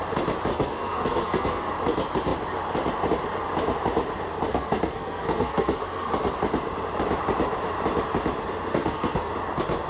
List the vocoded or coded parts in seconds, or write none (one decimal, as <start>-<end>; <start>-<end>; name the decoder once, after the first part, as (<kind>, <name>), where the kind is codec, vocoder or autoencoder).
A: 0.5-1.7 (codec, SNAC); 4.5-6.1; 8.7-9.3